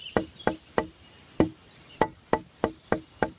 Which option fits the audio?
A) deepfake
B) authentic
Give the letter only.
B